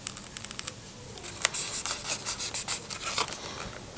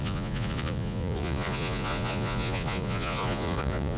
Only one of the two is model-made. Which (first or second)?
second